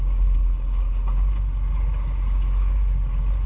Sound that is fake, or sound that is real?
real